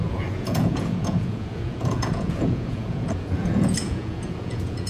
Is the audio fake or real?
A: fake